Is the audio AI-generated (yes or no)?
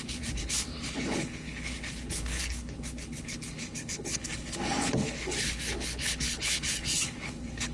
yes